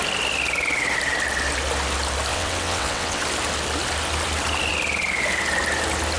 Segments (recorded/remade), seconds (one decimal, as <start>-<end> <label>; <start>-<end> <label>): 0.0-2.3 recorded; 2.3-3.2 remade; 3.2-6.2 recorded